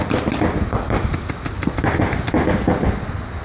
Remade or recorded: recorded